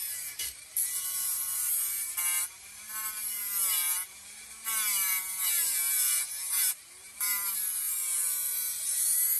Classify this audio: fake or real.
fake